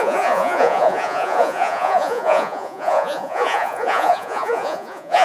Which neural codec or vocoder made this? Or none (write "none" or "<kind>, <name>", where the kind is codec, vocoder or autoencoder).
vocoder, Vocos